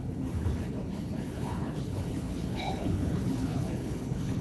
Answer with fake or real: fake